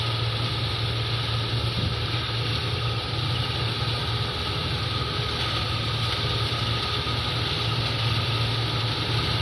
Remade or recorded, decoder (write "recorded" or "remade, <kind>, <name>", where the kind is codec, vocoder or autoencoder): recorded